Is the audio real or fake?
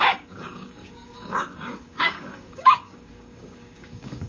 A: fake